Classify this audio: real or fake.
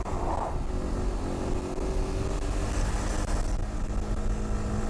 real